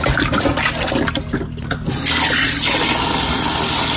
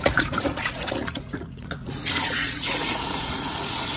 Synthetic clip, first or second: second